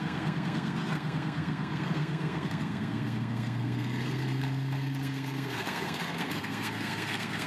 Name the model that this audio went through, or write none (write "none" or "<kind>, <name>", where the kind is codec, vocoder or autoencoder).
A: codec, SNAC